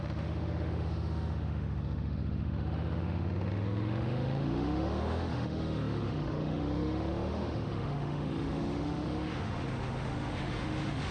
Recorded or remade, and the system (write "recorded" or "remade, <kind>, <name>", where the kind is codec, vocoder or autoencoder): remade, autoencoder, DAC-VAE